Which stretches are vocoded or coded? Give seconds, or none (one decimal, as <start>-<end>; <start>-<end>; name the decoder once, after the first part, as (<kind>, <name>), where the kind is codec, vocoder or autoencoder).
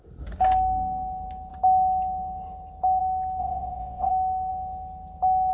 3.4-4.1 (vocoder, WaveNeXt)